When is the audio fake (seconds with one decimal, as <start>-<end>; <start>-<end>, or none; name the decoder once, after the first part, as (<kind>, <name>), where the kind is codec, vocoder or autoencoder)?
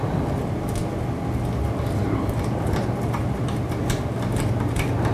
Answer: none